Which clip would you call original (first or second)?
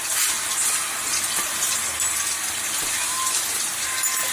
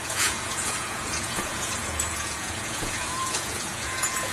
first